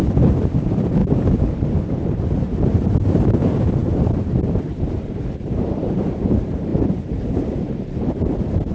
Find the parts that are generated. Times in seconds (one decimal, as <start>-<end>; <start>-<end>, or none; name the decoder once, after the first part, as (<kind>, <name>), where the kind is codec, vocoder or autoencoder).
0.0-8.7 (vocoder, BigVGAN v2)